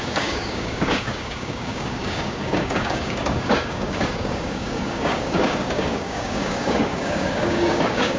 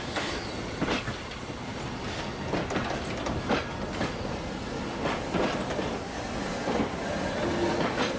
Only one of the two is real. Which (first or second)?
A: second